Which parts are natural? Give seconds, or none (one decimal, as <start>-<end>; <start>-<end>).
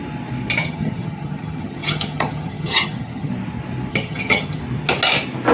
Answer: 0.0-0.6; 3.3-3.9; 4.6-5.5